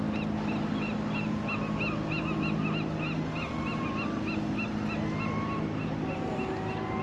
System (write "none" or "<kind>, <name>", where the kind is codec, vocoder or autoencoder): none